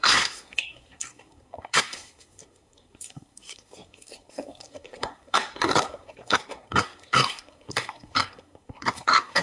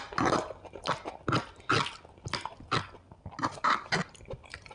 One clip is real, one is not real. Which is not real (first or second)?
first